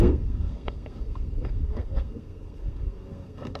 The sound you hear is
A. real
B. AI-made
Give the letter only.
B